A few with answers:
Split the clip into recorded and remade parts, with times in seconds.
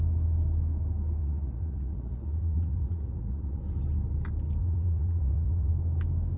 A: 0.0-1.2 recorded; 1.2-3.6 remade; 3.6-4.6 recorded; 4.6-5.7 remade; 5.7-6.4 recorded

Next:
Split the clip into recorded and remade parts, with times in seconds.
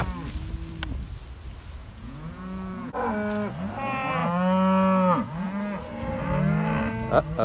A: 0.0-1.8 recorded; 1.8-2.9 remade; 2.9-7.4 recorded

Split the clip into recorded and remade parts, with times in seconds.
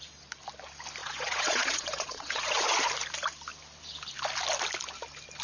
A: 0.0-1.0 recorded; 1.0-2.9 remade; 2.9-5.4 recorded